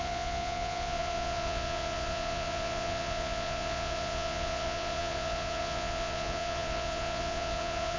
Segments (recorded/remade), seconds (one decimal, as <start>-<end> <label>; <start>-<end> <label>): 0.0-8.0 remade